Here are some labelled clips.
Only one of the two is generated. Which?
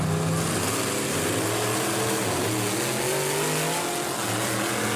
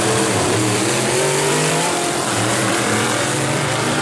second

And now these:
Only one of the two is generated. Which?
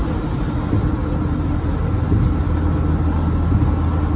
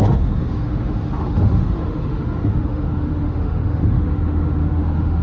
second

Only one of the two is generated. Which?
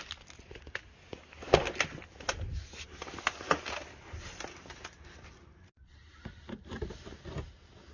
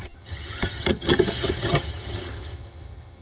second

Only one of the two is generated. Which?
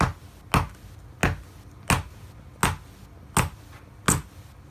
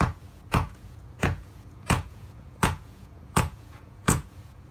second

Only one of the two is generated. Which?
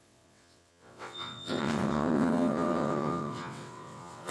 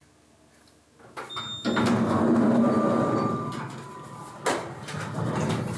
first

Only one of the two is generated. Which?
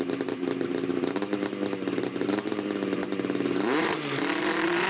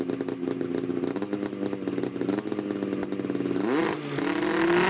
first